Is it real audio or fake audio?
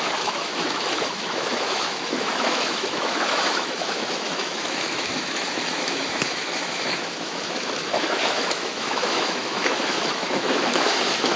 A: fake